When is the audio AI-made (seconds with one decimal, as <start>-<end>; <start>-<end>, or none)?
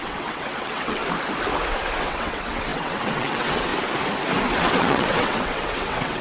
0.0-1.0; 2.0-3.7; 4.5-6.2